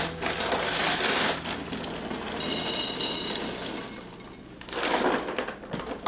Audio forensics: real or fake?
real